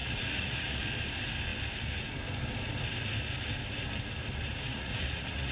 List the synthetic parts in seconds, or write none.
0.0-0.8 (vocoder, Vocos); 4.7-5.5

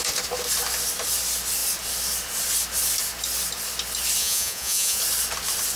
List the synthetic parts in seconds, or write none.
4.2-5.0 (vocoder, Vocos)

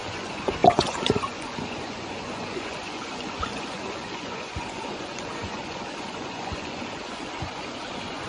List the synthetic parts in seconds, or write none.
0.0-8.3 (vocoder, Vocos)

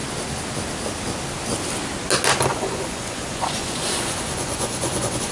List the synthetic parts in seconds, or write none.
2.5-5.3 (vocoder, Vocos)

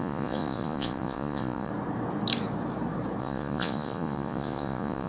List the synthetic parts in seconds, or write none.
0.0-1.7 (vocoder, Vocos); 3.2-5.1

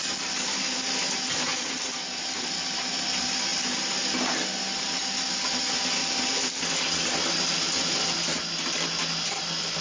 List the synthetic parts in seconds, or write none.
none